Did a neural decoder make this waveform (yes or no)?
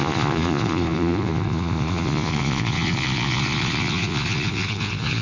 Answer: yes